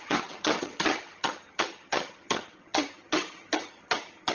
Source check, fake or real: fake